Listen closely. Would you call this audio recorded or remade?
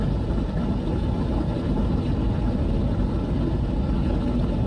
recorded